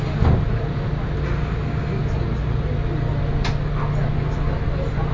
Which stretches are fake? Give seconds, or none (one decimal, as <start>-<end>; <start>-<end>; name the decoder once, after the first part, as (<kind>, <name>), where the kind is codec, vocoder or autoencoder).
none